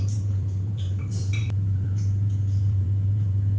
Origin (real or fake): fake